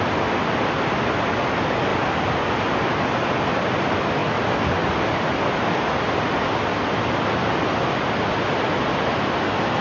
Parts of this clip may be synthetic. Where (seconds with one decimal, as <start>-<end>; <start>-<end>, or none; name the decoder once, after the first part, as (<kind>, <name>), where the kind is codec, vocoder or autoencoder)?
none